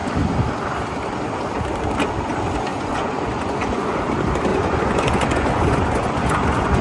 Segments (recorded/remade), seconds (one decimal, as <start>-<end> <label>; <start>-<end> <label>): 0.0-2.7 recorded; 2.7-4.0 remade; 4.0-4.5 recorded; 4.5-6.8 remade